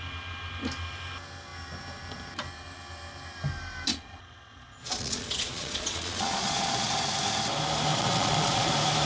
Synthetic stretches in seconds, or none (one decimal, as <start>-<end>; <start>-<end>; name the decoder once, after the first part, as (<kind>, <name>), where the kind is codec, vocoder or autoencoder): 3.9-6.9 (vocoder, Vocos); 7.9-8.7